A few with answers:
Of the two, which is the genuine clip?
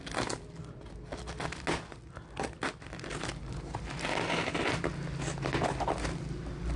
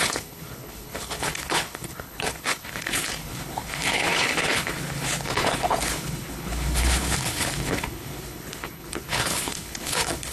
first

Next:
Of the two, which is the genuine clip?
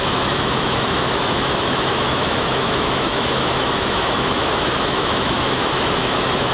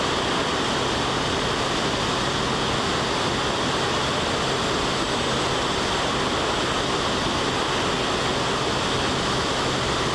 second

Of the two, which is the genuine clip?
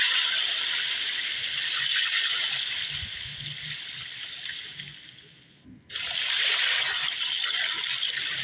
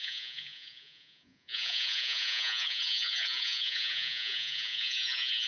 first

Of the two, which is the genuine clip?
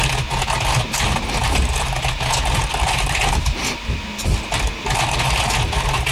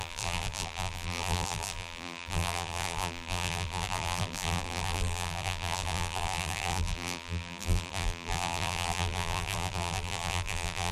first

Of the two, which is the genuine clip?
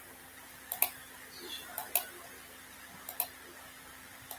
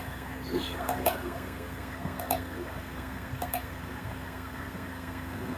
first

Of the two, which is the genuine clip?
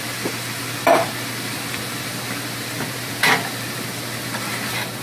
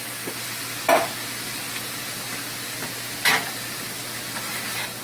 second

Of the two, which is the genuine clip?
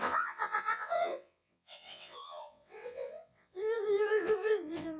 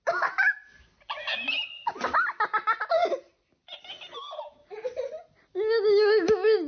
second